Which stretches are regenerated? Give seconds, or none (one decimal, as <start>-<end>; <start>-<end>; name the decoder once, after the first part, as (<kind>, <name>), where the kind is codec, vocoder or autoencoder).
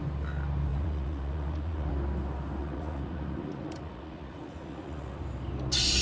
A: 0.7-1.9 (vocoder, Vocos); 2.6-5.2